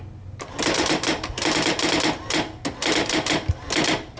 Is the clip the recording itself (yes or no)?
yes